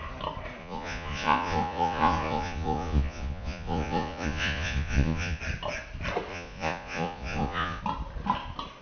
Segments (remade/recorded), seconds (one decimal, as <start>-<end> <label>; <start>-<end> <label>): 0.0-0.6 recorded; 0.6-5.4 remade; 5.4-6.3 recorded; 6.3-7.8 remade; 7.8-8.8 recorded